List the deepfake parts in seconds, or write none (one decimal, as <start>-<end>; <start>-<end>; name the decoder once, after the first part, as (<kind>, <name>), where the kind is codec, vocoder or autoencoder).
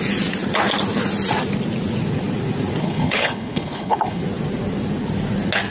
2.8-4.2 (codec, HILCodec)